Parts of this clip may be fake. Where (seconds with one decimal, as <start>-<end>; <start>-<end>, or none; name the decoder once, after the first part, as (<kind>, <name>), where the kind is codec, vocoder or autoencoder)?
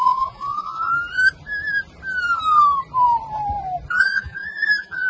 0.0-0.9 (vocoder, Vocos); 4.0-5.1